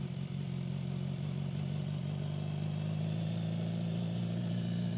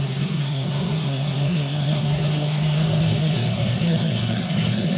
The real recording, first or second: first